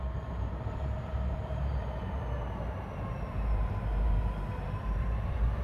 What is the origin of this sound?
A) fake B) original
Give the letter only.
A